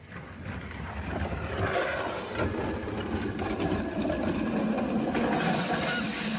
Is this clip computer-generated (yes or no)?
no